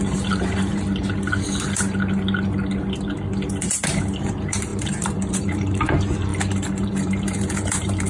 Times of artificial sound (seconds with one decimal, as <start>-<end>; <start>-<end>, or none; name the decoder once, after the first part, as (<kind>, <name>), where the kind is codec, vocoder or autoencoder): 0.0-1.0 (vocoder, BigVGAN v2); 3.6-6.3; 6.8-8.1